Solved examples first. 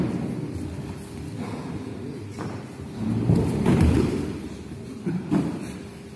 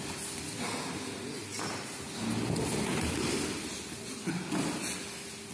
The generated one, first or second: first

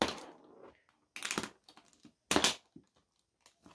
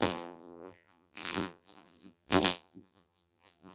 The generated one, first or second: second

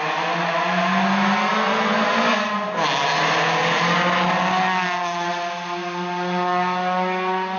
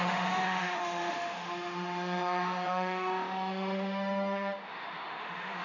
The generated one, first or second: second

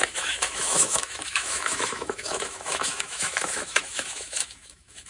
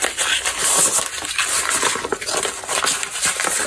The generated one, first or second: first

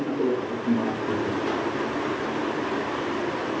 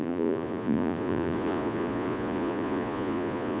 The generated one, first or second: second